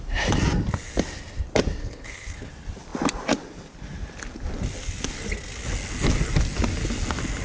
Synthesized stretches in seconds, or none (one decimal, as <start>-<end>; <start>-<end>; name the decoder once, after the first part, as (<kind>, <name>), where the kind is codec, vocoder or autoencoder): 1.8-2.5 (codec, HILCodec)